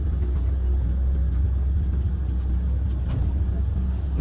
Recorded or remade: recorded